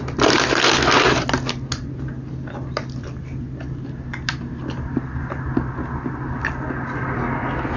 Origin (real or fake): real